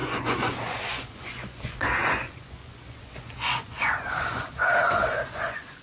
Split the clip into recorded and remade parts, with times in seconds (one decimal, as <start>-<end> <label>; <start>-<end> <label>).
0.0-5.8 remade

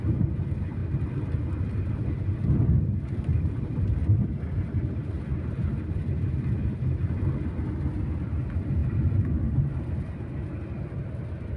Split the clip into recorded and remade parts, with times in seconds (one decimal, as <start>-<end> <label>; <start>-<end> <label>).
0.0-3.3 recorded; 3.3-4.3 remade; 4.3-11.6 recorded

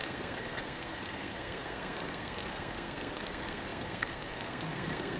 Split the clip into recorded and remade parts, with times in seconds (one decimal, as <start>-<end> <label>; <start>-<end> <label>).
0.0-5.2 remade